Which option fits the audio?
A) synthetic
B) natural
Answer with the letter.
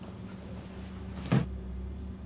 B